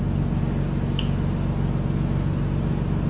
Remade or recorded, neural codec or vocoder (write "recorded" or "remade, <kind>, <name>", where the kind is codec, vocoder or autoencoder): recorded